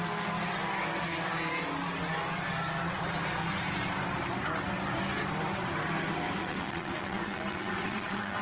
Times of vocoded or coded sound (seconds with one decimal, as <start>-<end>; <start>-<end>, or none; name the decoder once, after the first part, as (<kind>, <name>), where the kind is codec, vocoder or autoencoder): 6.4-8.4 (vocoder, WaveNeXt)